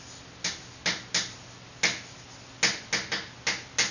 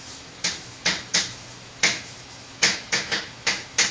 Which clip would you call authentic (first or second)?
first